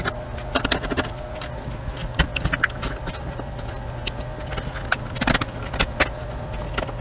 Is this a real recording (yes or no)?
yes